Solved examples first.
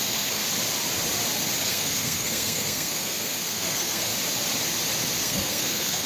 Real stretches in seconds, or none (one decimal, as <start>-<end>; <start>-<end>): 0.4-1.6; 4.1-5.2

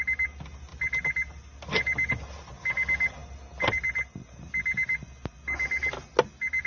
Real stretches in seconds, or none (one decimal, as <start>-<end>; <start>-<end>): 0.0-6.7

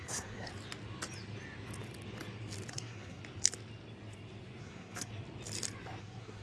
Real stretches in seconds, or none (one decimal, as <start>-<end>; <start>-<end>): 0.5-2.7; 3.2-4.6; 5.1-6.0

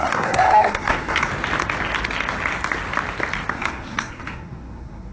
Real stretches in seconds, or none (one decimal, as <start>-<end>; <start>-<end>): 1.3-3.5

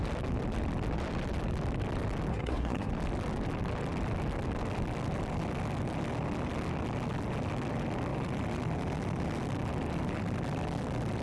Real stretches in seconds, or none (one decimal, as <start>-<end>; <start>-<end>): 0.0-2.3; 2.9-11.2

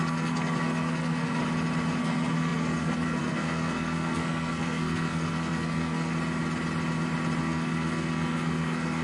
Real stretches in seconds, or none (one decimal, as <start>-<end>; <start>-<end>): 1.4-2.0; 6.1-7.4

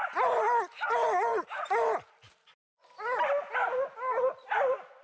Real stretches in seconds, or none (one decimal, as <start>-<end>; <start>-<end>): 0.0-5.0

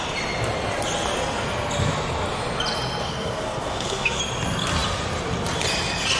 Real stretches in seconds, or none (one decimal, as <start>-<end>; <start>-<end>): 0.0-3.0; 4.2-6.2